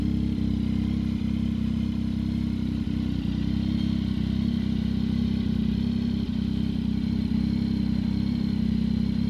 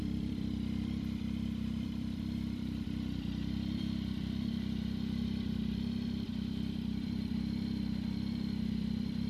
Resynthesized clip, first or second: second